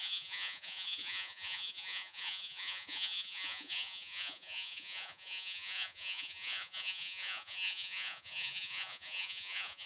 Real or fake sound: fake